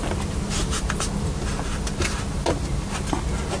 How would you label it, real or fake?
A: real